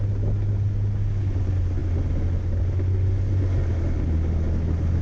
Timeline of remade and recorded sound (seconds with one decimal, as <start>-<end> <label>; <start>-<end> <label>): 0.0-5.0 recorded

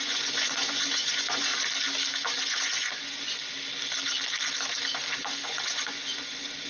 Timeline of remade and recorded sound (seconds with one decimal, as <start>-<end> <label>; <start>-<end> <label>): 0.0-1.5 remade; 1.5-2.4 recorded; 2.4-3.4 remade; 3.4-5.2 recorded; 5.2-6.7 remade

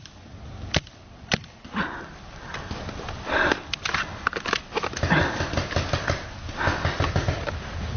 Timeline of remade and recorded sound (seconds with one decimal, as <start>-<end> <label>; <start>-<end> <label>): 0.0-8.0 recorded

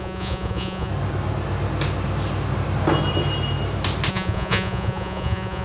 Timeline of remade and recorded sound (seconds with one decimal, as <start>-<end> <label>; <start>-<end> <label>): 0.0-0.9 remade; 0.9-4.1 recorded; 4.1-5.6 remade